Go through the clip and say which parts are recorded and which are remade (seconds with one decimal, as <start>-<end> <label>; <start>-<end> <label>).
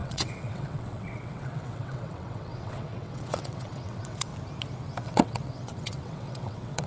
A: 0.0-4.3 remade; 4.3-5.0 recorded; 5.0-6.9 remade